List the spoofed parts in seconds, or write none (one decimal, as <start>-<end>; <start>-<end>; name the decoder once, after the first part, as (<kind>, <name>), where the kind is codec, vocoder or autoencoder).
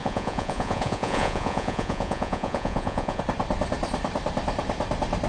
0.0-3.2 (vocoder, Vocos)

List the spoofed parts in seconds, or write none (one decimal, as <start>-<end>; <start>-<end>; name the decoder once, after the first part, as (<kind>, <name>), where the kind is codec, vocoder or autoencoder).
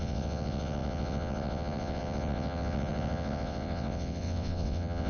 0.0-5.1 (vocoder, WaveNeXt)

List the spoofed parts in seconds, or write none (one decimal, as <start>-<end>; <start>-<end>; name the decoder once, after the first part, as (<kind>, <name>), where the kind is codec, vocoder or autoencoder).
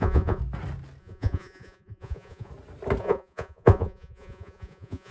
0.0-0.4 (vocoder, Vocos); 1.0-2.5; 3.0-5.1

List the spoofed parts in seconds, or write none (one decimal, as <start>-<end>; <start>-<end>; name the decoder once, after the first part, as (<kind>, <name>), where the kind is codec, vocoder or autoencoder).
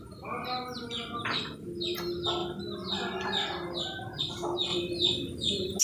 none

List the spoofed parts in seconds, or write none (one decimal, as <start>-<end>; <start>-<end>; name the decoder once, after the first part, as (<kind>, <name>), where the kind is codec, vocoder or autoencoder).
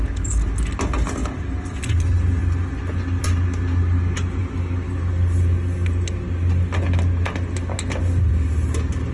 none